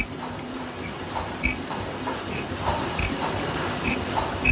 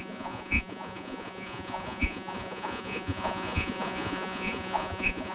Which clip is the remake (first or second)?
second